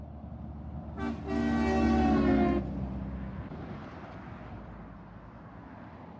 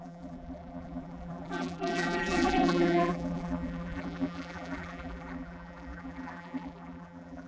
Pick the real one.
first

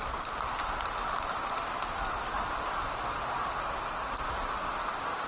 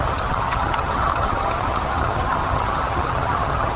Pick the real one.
first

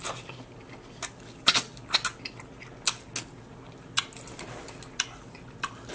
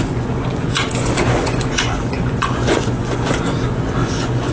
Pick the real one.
first